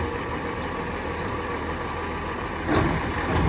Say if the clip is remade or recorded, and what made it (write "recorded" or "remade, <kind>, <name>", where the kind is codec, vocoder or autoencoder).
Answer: recorded